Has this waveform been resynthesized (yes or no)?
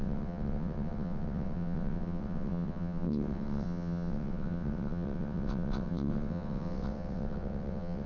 yes